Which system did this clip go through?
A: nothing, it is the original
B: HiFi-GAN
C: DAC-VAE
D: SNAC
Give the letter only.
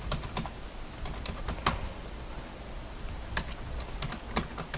A